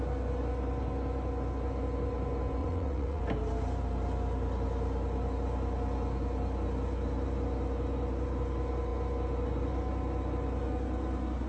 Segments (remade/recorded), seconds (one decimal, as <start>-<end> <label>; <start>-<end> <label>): 0.0-2.6 recorded; 2.6-3.2 remade; 3.2-11.5 recorded